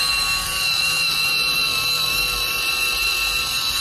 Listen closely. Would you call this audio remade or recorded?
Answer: remade